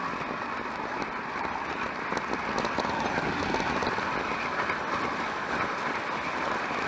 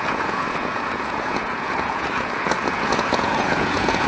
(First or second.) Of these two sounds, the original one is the first